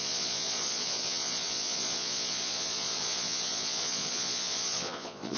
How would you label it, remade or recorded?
remade